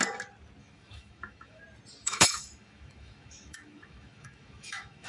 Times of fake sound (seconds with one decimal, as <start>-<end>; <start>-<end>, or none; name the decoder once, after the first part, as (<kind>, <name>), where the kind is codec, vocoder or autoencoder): 0.6-1.6 (autoencoder, DAC-VAE); 2.0-5.1